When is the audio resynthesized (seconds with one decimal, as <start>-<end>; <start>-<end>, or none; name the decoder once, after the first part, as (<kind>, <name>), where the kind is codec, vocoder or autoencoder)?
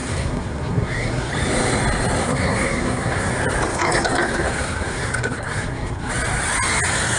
0.0-1.3 (codec, SNAC); 2.2-3.3; 3.7-6.1